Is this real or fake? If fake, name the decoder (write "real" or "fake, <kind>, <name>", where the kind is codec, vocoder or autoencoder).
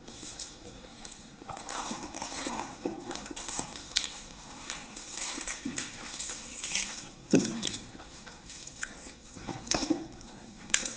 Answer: fake, codec, SNAC